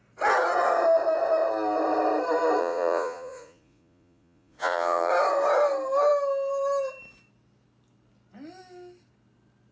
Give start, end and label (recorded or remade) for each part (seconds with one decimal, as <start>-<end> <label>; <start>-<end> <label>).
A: 0.0-2.6 recorded; 2.6-5.1 remade; 5.1-9.7 recorded